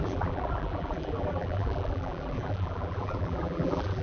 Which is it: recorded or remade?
remade